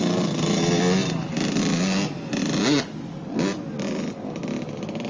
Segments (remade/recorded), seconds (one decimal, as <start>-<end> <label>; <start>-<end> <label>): 0.0-5.1 recorded